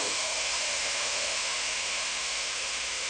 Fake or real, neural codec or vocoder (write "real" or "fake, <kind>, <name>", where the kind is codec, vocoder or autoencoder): fake, autoencoder, DAC-VAE